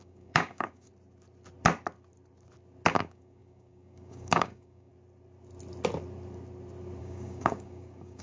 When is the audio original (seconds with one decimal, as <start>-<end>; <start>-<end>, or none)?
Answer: 0.9-2.9; 4.9-7.0